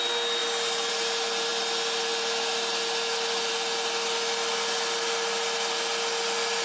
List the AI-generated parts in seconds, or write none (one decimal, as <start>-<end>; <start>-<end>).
none